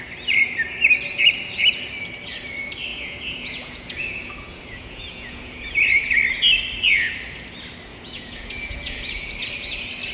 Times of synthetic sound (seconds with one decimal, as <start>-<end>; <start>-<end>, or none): 2.9-6.2; 7.9-9.1

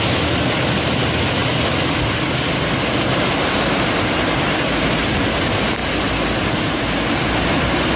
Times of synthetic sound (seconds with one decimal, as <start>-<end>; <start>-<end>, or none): none

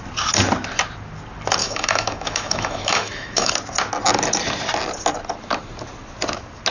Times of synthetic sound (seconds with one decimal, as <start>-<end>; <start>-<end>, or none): 1.6-3.5